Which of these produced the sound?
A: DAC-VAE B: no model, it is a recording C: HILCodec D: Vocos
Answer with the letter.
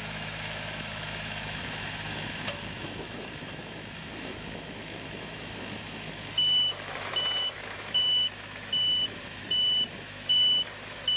A